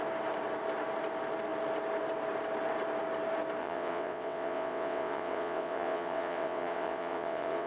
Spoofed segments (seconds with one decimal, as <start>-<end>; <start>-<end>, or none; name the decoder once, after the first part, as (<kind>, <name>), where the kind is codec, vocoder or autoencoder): 3.6-7.7 (vocoder, WaveNeXt)